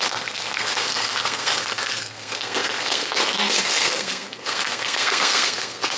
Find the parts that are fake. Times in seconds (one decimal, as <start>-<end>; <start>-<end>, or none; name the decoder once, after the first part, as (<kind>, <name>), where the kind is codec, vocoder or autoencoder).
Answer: 0.0-6.0 (codec, SNAC)